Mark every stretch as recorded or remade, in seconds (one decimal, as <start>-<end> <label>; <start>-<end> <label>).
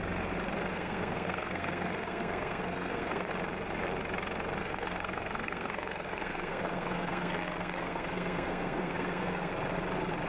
0.0-0.7 recorded; 0.7-3.3 remade; 3.3-4.6 recorded; 4.6-9.5 remade; 9.5-10.3 recorded